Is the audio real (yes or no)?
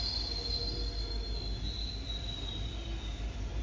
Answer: yes